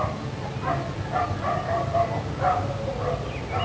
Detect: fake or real real